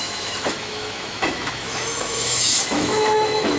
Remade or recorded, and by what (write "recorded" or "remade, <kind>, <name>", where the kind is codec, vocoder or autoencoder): remade, autoencoder, DAC-VAE